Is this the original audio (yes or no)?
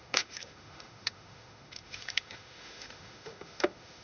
no